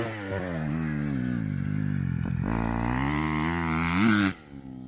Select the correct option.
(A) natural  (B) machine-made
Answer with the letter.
A